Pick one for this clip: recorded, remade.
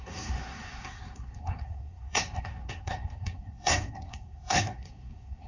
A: remade